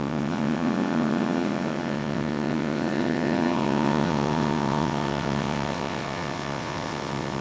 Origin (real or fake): fake